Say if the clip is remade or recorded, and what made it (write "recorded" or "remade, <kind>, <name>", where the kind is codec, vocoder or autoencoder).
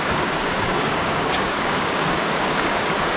remade, codec, DAC